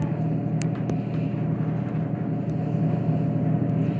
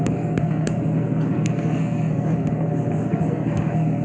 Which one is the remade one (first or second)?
second